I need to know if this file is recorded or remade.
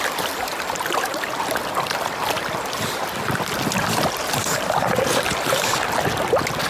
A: recorded